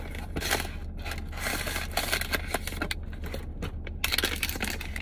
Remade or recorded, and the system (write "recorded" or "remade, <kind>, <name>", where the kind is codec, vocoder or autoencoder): recorded